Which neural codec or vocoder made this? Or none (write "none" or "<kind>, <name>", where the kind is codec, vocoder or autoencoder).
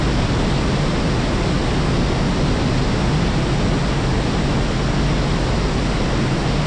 none